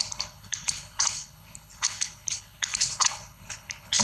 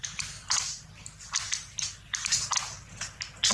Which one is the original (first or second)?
second